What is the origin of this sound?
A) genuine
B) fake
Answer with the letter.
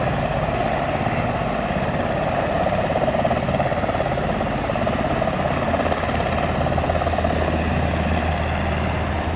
A